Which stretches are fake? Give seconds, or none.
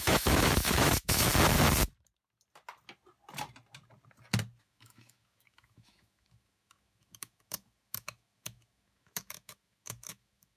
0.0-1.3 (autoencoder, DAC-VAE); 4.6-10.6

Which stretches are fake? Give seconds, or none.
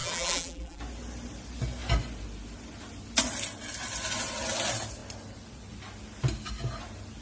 0.0-0.8 (vocoder, BigVGAN v2)